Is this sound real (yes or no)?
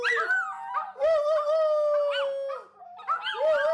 yes